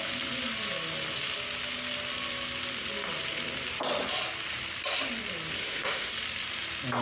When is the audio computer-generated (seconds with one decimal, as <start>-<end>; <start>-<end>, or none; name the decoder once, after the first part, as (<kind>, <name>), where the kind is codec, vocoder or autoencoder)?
5.6-6.1 (autoencoder, DAC-VAE)